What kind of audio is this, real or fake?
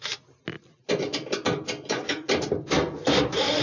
real